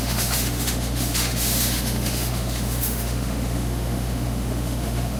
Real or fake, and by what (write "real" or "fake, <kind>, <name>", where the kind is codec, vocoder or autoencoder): fake, autoencoder, DAC-VAE